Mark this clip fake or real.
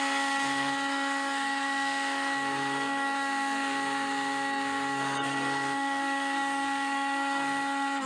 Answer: fake